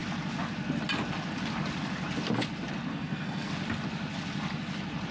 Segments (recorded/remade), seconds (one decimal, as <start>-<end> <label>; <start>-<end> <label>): 0.0-2.9 recorded; 2.9-3.5 remade; 3.5-5.1 recorded

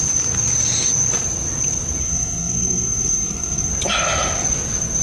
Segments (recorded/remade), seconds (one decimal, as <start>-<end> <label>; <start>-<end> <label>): 0.0-2.0 recorded; 2.0-3.7 remade; 3.7-5.0 recorded